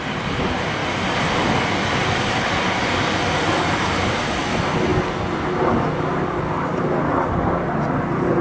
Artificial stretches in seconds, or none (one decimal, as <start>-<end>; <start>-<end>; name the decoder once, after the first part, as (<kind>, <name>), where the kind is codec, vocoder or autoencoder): none